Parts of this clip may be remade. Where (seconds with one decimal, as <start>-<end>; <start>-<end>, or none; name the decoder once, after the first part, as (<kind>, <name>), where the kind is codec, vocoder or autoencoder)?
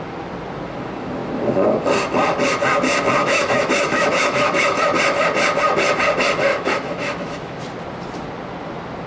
3.2-4.8 (autoencoder, DAC-VAE); 6.5-7.6